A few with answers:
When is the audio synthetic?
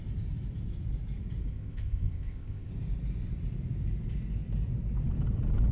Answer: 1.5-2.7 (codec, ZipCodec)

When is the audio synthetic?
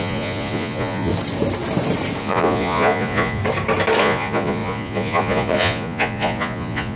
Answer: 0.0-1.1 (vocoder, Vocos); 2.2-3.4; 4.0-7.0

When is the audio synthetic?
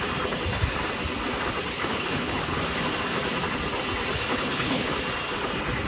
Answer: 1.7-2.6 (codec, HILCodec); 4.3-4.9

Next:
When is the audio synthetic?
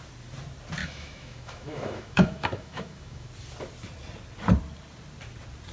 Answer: 0.8-3.3 (autoencoder, DAC-VAE)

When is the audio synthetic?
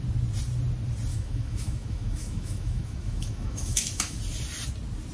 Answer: 1.1-4.2 (autoencoder, DAC-VAE)